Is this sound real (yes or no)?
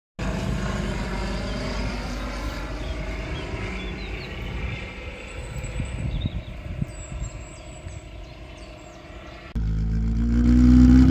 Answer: yes